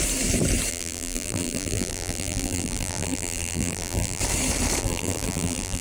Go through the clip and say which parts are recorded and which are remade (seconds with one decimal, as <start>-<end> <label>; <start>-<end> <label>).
0.0-0.7 recorded; 0.7-4.2 remade; 4.2-4.8 recorded; 4.8-5.8 remade